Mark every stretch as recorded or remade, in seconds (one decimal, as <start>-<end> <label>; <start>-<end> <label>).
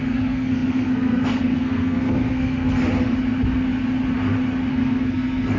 0.0-2.8 remade; 2.8-4.7 recorded; 4.7-5.6 remade